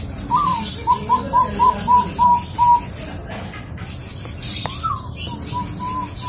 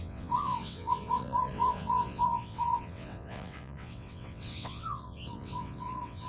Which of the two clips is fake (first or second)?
second